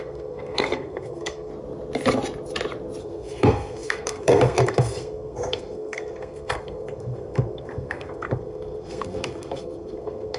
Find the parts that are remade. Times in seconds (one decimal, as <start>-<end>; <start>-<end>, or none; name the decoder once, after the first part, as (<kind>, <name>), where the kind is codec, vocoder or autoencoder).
0.0-1.5 (codec, SNAC); 3.0-10.4